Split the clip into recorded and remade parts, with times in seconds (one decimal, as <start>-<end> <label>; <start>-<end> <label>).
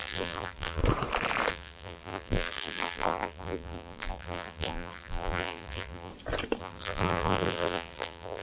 0.0-0.8 remade; 0.8-1.5 recorded; 1.5-6.1 remade; 6.1-6.6 recorded; 6.6-8.4 remade